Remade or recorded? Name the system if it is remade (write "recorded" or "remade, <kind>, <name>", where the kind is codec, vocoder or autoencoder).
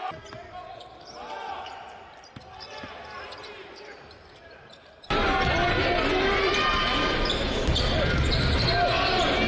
recorded